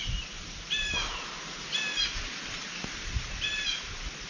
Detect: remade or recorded recorded